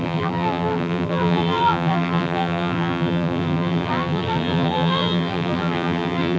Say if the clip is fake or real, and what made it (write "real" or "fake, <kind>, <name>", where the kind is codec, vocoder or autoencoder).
fake, vocoder, BigVGAN v2